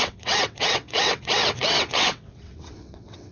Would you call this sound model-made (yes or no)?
yes